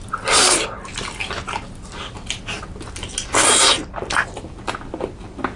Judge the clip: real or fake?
real